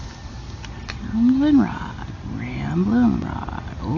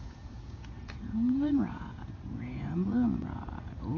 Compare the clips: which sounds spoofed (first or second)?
second